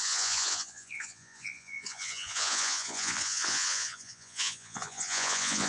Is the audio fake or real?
fake